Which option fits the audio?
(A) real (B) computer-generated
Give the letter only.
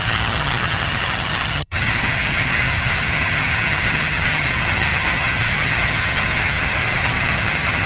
B